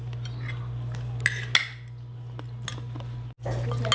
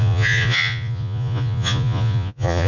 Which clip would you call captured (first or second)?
first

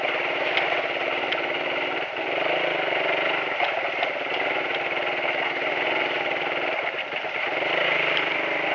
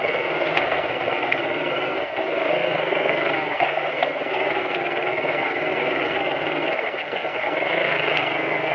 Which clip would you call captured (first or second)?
first